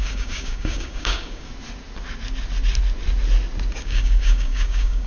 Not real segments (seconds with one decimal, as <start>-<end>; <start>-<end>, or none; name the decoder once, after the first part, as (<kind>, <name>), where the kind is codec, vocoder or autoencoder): 0.0-1.5 (codec, DAC); 3.8-5.1